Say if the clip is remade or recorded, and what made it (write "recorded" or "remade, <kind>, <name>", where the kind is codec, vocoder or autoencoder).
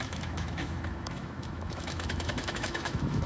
remade, autoencoder, DAC-VAE